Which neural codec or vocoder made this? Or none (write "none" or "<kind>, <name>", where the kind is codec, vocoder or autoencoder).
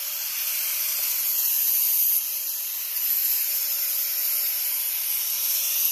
vocoder, BigVGAN v2